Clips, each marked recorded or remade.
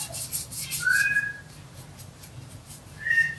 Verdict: remade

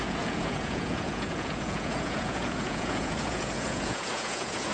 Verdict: remade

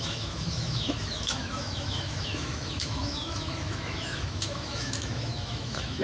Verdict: remade